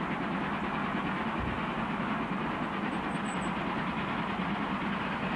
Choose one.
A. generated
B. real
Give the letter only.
B